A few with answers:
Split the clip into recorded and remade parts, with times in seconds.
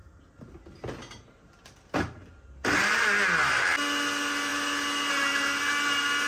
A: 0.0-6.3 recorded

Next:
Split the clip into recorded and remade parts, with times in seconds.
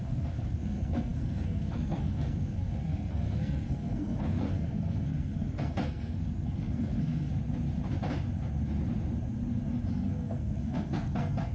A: 0.0-7.3 remade; 7.3-9.9 recorded; 9.9-11.5 remade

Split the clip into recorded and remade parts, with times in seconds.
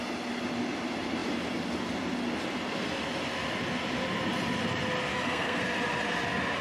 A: 0.0-5.1 recorded; 5.1-5.6 remade; 5.6-6.6 recorded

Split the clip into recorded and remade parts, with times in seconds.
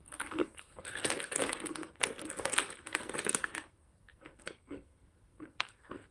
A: 0.0-6.1 remade